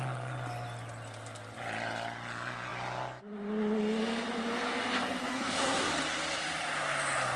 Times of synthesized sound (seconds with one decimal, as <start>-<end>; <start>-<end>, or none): 5.3-5.9